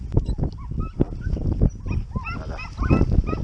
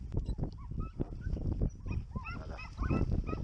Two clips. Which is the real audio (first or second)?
first